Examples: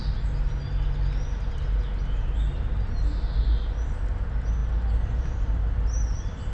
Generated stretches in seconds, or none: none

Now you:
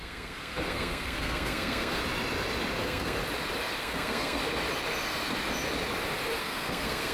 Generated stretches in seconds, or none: 0.0-2.0 (codec, SNAC); 2.8-3.2; 3.8-4.4; 6.4-7.1

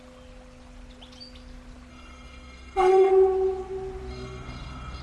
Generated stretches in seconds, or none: 1.9-3.1 (codec, SNAC); 4.1-5.0

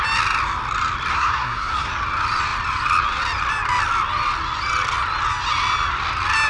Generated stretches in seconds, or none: 1.1-1.9 (codec, SNAC)